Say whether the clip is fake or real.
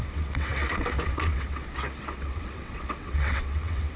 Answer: fake